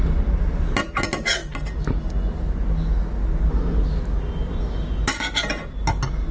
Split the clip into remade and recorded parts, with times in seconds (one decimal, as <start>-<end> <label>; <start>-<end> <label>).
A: 0.0-6.3 recorded